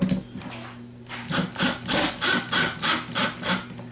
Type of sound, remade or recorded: recorded